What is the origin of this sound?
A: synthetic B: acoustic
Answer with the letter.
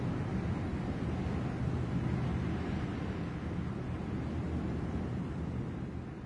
B